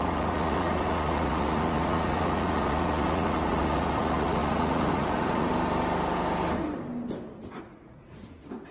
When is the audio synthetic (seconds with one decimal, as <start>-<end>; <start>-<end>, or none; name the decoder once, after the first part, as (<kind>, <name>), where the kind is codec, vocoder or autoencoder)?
0.0-5.5 (vocoder, Vocos); 7.6-8.7

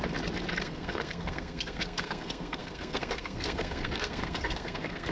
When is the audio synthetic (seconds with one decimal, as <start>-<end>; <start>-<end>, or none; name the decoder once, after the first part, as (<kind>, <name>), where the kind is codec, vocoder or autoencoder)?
0.6-5.1 (codec, SNAC)

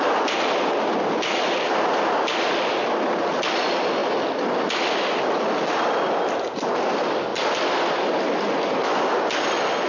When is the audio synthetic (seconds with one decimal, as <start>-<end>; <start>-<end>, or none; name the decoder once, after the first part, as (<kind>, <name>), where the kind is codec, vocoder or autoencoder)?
none

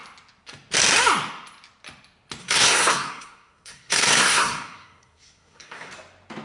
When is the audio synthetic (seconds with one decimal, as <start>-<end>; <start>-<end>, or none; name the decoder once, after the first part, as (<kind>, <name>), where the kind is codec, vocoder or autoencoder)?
2.4-5.9 (codec, SNAC)

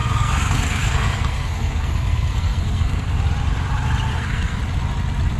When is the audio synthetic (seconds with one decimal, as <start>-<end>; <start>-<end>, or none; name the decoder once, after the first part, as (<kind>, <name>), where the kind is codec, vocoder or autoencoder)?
0.0-3.2 (codec, SNAC); 4.1-4.6

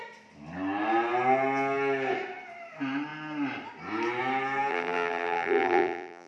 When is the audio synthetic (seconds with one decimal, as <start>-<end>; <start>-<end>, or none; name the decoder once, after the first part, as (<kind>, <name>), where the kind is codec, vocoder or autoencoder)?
4.7-6.3 (vocoder, BigVGAN v2)